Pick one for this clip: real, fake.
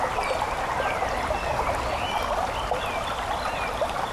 real